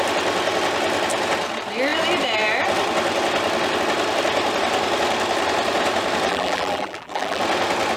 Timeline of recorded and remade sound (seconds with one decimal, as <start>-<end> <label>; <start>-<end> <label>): 0.0-6.3 recorded; 6.3-7.4 remade; 7.4-8.0 recorded